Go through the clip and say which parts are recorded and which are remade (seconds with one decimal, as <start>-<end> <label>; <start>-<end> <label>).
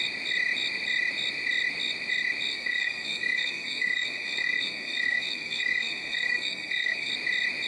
0.0-2.5 recorded; 2.5-7.1 remade; 7.1-7.7 recorded